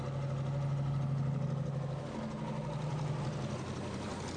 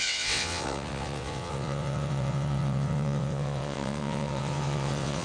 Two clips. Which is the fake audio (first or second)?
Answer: second